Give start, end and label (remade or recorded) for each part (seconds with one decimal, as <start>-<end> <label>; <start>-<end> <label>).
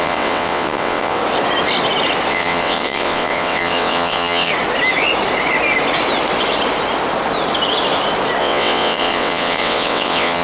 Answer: 0.0-1.2 remade; 1.2-2.3 recorded; 2.3-4.5 remade; 4.5-8.4 recorded; 8.4-10.4 remade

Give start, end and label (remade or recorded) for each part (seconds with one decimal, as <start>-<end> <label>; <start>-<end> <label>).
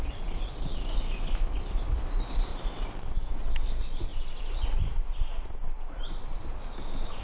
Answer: 0.0-2.5 recorded; 2.5-3.3 remade; 3.3-4.1 recorded; 4.1-6.0 remade; 6.0-7.2 recorded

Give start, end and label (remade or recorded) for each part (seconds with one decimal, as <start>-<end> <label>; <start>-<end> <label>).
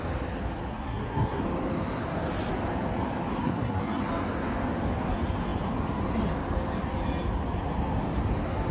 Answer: 0.0-0.7 recorded; 0.7-1.4 remade; 1.4-3.4 recorded; 3.4-4.0 remade; 4.0-8.7 recorded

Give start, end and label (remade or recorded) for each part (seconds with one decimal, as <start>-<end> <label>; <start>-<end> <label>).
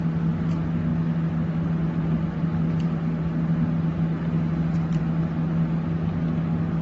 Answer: 0.0-6.8 recorded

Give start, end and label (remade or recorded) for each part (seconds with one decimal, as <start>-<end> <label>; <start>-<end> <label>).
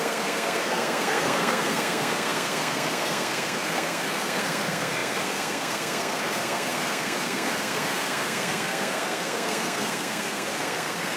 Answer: 0.0-11.2 remade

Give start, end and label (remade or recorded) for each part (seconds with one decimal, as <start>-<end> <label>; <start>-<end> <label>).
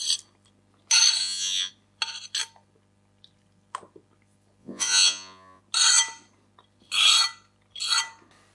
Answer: 0.0-1.2 recorded; 1.2-1.7 remade; 1.7-4.6 recorded; 4.6-5.6 remade; 5.6-8.5 recorded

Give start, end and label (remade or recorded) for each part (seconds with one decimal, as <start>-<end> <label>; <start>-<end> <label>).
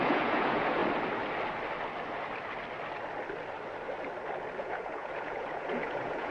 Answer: 0.0-0.8 remade; 0.8-4.6 recorded; 4.6-6.3 remade